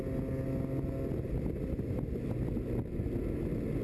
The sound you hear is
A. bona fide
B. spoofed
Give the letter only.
A